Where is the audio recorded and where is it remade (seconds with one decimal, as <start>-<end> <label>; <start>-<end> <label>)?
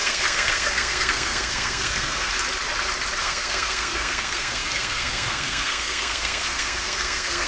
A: 0.0-2.3 remade; 2.3-3.2 recorded; 3.2-7.5 remade